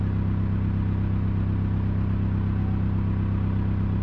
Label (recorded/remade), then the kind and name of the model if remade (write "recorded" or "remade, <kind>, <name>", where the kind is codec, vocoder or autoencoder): recorded